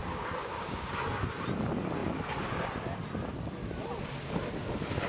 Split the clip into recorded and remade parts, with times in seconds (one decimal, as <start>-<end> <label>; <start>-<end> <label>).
0.0-1.0 remade; 1.0-5.1 recorded